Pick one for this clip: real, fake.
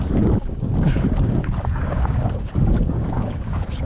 fake